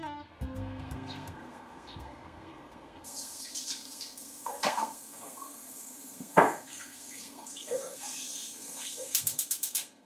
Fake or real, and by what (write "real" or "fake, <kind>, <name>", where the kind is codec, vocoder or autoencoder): fake, codec, SNAC